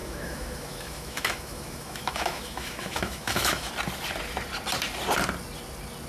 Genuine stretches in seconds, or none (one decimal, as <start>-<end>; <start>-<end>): 3.7-6.1